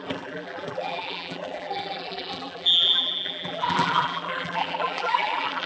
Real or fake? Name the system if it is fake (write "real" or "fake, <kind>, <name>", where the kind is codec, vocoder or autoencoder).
fake, vocoder, BigVGAN v2